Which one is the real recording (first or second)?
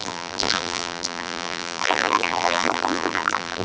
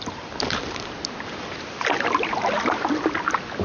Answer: second